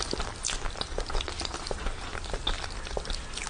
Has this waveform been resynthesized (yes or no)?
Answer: no